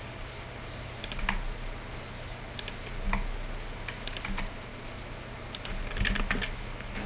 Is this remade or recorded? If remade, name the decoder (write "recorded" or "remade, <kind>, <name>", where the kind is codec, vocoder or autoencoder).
recorded